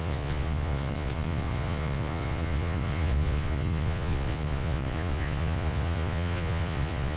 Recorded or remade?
remade